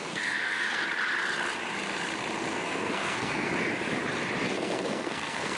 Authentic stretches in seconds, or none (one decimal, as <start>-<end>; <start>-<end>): 0.8-2.5; 3.5-4.5

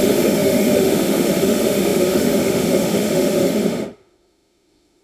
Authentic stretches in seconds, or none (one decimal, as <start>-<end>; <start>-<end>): none

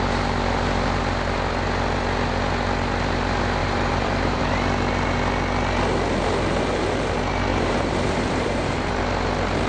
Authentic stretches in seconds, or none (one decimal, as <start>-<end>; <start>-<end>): 0.0-3.6; 4.4-7.5; 9.0-9.7

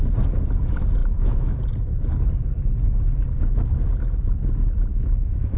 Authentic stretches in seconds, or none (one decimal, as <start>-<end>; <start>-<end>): 0.0-1.0; 1.6-4.9

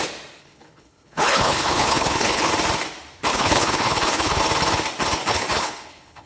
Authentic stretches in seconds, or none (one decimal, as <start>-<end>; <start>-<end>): 0.0-0.4; 2.5-3.3; 4.4-5.3

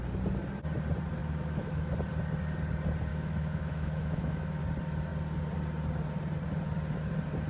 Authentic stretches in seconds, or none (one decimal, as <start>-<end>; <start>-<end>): 0.0-1.2; 1.9-3.1; 4.6-7.5

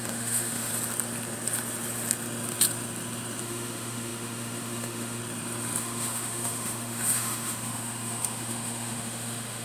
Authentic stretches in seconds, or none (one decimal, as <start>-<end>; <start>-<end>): 0.7-3.4; 5.2-5.8